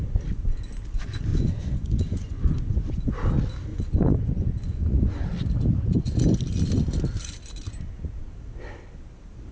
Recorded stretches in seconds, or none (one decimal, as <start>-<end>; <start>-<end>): 0.0-1.3; 2.9-3.7; 5.1-9.5